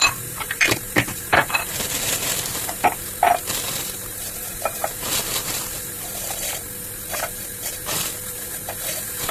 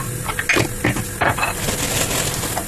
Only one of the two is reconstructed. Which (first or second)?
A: first